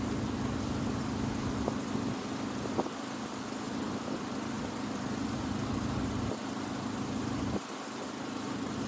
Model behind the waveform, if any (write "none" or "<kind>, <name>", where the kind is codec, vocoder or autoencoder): none